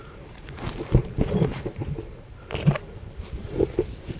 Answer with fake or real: fake